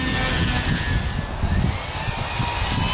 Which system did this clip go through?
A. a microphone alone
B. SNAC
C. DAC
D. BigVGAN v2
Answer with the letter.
A